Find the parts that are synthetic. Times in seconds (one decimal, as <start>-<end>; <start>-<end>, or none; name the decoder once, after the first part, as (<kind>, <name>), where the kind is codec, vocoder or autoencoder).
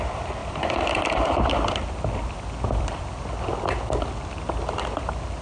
0.4-3.0 (vocoder, BigVGAN v2)